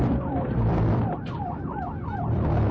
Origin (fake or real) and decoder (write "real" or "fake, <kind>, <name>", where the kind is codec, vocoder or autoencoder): fake, vocoder, BigVGAN v2